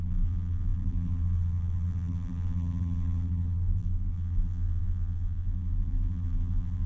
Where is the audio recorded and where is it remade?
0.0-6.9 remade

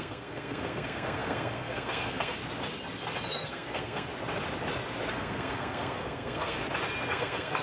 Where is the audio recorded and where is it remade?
0.0-2.4 remade; 2.4-3.3 recorded; 3.3-4.1 remade; 4.1-5.1 recorded; 5.1-6.6 remade; 6.6-7.1 recorded; 7.1-7.6 remade

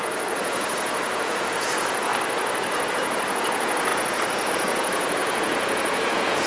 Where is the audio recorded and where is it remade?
0.0-2.1 remade; 2.1-2.9 recorded; 2.9-6.5 remade

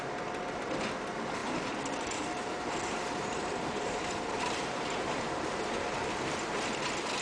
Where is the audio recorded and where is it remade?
0.0-1.4 recorded; 1.4-5.7 remade; 5.7-7.2 recorded

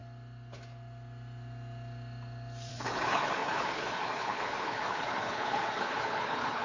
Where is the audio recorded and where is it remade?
0.0-2.7 recorded; 2.7-6.6 remade

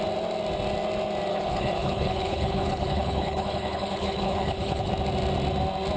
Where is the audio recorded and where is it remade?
0.0-1.3 recorded; 1.3-4.9 remade; 4.9-6.0 recorded

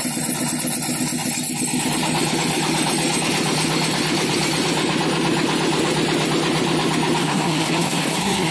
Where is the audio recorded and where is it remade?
0.0-7.2 recorded; 7.2-8.5 remade